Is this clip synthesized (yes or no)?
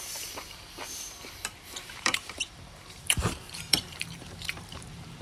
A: yes